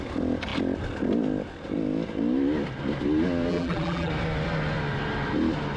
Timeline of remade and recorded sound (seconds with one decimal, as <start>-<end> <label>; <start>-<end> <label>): 0.0-3.5 recorded; 3.5-4.1 remade; 4.1-5.8 recorded

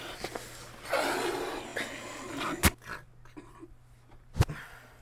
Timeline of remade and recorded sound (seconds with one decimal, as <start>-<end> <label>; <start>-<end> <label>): 0.0-1.7 remade; 1.7-3.5 recorded; 3.5-5.0 remade

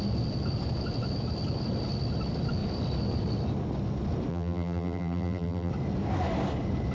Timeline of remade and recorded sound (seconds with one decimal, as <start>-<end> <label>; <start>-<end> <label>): 0.0-4.3 recorded; 4.3-5.7 remade; 5.7-6.9 recorded

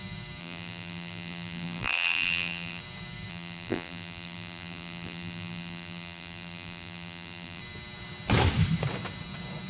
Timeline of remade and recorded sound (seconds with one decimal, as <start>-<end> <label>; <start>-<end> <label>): 0.0-0.4 recorded; 0.4-2.8 remade; 2.8-3.3 recorded; 3.3-7.6 remade; 7.6-9.7 recorded